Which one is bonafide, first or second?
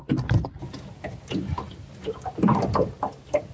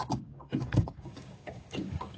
first